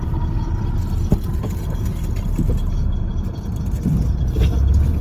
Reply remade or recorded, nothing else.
recorded